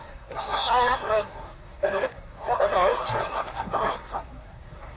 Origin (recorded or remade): remade